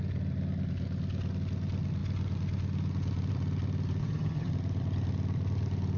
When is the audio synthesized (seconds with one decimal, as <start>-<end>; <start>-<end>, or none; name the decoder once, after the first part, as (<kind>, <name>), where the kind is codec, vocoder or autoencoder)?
4.0-4.5 (vocoder, HiFi-GAN)